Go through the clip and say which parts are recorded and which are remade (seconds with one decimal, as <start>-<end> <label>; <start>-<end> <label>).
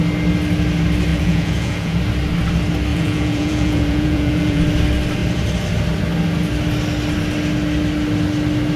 0.0-1.1 recorded; 1.1-2.0 remade; 2.0-2.9 recorded; 2.9-4.6 remade; 4.6-8.8 recorded